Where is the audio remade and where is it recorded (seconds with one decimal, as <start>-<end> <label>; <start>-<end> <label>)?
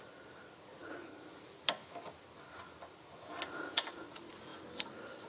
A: 0.0-5.3 recorded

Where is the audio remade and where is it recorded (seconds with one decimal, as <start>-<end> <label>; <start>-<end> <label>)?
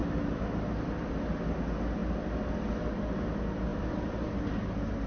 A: 0.0-1.1 remade; 1.1-2.0 recorded; 2.0-2.5 remade; 2.5-3.7 recorded; 3.7-4.4 remade; 4.4-5.1 recorded